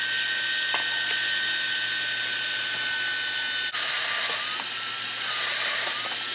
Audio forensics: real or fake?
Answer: real